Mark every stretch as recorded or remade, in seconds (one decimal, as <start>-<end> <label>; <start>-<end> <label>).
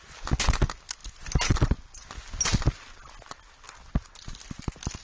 0.0-5.0 recorded